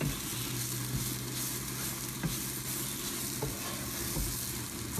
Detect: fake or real real